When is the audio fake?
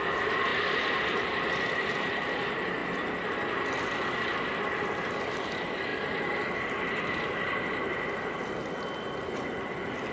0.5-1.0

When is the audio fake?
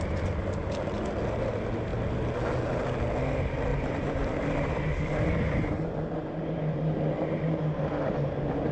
3.7-7.8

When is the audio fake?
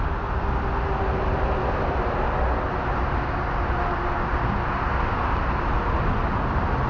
none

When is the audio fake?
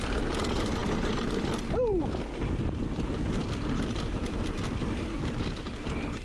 0.0-0.8; 4.1-6.2